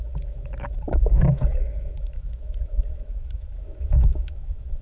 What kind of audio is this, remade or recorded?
remade